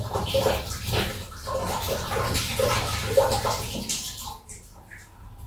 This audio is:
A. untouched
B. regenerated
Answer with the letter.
B